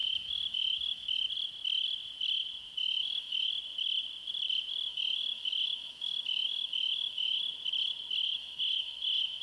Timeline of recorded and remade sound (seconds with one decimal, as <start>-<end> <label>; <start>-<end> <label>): 0.0-1.2 remade; 1.2-2.8 recorded; 2.8-3.5 remade; 3.5-4.9 recorded; 4.9-7.4 remade; 7.4-8.2 recorded; 8.2-9.4 remade